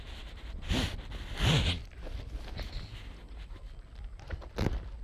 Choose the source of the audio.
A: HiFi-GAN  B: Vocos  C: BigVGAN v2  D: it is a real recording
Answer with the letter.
D